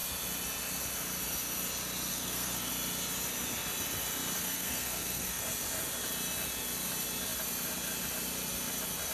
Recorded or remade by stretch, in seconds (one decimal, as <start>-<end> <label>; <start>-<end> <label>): 0.0-2.1 recorded; 2.1-2.7 remade; 2.7-4.4 recorded; 4.4-5.4 remade; 5.4-9.1 recorded